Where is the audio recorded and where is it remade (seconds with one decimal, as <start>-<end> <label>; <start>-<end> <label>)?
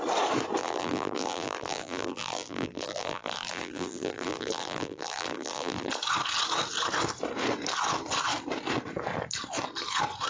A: 0.0-0.6 recorded; 0.6-5.9 remade; 5.9-10.3 recorded